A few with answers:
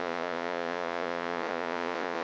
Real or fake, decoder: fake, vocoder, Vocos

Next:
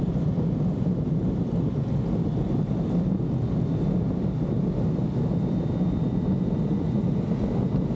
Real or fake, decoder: real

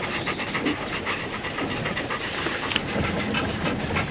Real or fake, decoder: real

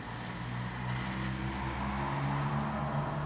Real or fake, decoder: real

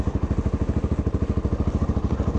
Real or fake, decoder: real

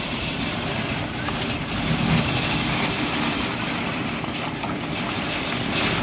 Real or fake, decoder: real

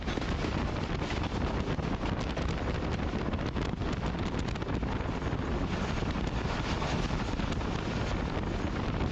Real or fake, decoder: real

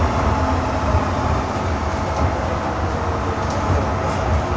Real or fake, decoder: real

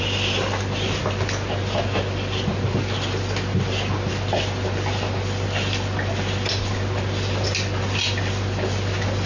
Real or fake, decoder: real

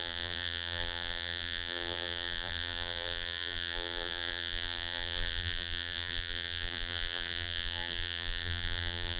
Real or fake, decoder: fake, vocoder, BigVGAN v2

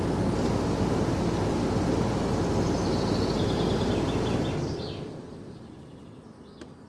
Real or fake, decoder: real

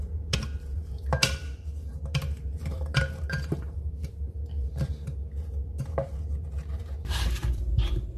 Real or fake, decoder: fake, vocoder, BigVGAN v2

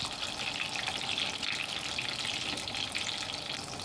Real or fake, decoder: real